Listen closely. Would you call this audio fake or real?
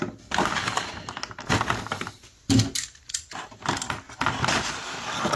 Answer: real